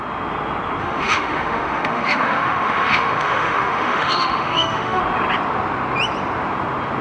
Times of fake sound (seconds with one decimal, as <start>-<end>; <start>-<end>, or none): 0.8-5.0